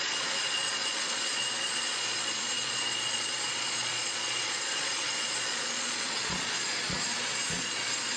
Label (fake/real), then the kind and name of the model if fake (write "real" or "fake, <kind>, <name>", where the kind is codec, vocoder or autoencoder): fake, vocoder, Vocos